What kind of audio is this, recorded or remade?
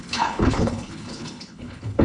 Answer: remade